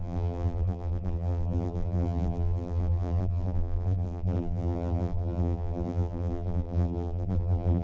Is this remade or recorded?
remade